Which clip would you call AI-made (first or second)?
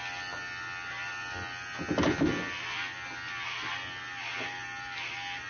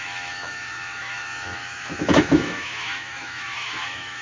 second